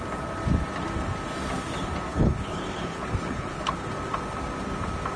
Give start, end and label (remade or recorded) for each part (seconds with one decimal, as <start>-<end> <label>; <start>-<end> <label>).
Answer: 0.0-2.1 recorded; 2.1-3.9 remade; 3.9-5.2 recorded